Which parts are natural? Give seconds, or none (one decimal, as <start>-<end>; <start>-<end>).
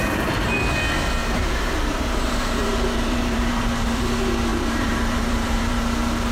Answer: 0.0-1.2; 4.0-4.5; 5.8-6.3